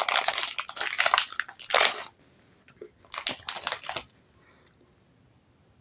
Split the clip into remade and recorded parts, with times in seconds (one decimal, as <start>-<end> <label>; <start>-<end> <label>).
0.0-5.8 recorded

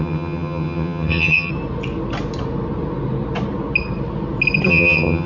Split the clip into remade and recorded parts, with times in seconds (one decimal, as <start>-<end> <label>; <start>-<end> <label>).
0.0-1.5 remade; 1.5-4.7 recorded; 4.7-5.3 remade